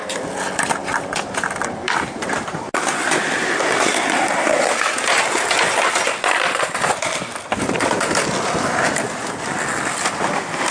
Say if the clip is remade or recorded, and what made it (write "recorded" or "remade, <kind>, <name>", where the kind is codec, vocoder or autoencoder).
recorded